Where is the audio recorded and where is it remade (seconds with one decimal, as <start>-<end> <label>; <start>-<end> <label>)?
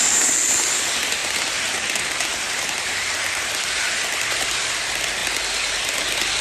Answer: 0.0-1.2 recorded; 1.2-4.8 remade; 4.8-6.4 recorded